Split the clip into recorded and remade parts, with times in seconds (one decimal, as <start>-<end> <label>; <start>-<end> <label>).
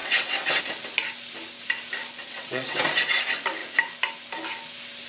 0.0-0.6 remade; 0.6-2.2 recorded; 2.2-2.8 remade; 2.8-5.1 recorded